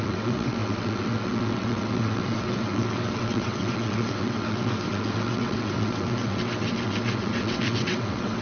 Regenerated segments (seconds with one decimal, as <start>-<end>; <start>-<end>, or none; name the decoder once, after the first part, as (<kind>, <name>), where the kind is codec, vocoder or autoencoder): 0.0-8.4 (vocoder, WaveNeXt)